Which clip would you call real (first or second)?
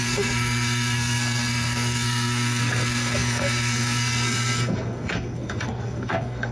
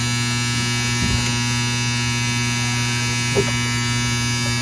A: second